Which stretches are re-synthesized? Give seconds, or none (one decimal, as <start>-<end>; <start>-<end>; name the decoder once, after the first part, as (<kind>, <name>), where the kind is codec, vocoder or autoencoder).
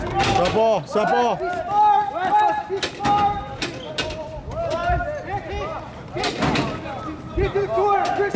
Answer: none